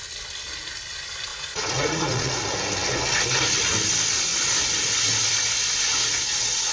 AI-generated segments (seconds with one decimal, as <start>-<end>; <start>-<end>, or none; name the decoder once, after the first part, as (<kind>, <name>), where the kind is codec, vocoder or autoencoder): 1.3-2.3 (vocoder, Vocos)